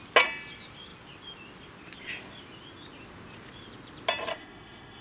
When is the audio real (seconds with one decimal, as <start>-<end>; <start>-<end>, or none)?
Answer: 0.0-4.3